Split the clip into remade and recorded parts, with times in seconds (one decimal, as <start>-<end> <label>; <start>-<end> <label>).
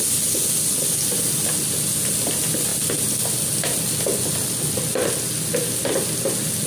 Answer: 0.0-6.7 recorded